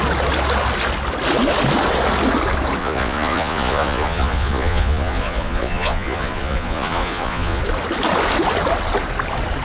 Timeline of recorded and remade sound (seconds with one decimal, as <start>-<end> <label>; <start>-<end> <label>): 0.0-2.8 recorded; 2.8-7.6 remade; 7.6-9.6 recorded